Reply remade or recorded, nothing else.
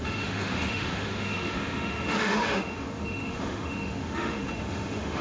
remade